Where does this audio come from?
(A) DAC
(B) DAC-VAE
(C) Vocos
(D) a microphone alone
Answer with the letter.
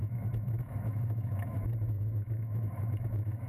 B